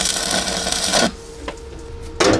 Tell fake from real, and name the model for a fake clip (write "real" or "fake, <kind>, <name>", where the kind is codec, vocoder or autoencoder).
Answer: real